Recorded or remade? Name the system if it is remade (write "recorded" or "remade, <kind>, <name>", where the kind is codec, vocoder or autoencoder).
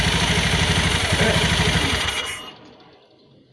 recorded